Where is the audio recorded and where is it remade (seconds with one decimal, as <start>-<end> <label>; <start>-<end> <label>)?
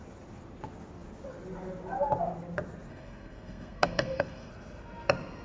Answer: 0.0-2.9 recorded; 2.9-4.5 remade; 4.5-5.4 recorded